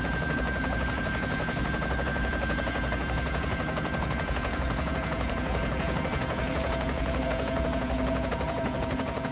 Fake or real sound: fake